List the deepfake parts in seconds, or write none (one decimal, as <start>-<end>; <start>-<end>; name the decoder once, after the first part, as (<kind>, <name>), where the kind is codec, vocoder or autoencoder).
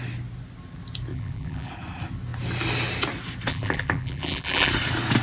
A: 1.1-1.7 (vocoder, BigVGAN v2); 3.5-4.7